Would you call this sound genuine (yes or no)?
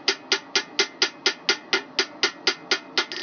yes